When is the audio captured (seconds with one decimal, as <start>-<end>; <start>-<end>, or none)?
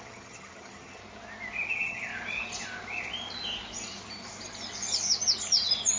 1.0-1.7; 2.1-6.0